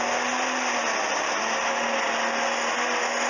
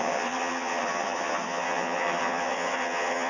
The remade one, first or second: second